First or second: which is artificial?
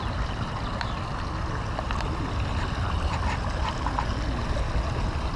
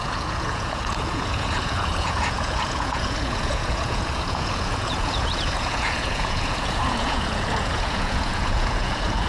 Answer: second